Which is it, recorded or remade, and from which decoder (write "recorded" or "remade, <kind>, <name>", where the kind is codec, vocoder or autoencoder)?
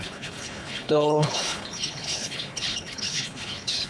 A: remade, codec, HILCodec